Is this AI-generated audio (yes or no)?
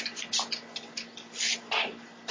no